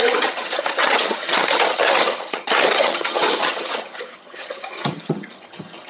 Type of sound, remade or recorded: remade